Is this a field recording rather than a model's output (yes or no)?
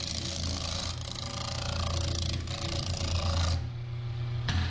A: yes